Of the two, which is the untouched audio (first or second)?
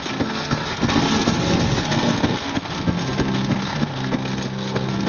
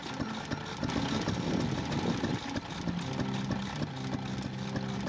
second